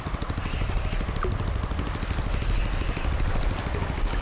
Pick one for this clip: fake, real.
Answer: real